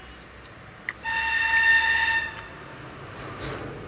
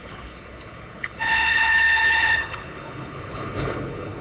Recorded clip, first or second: first